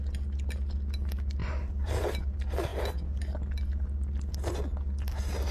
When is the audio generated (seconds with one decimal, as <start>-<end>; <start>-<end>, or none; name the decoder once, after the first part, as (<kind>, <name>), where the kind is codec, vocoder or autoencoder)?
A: 1.4-2.2 (vocoder, BigVGAN v2)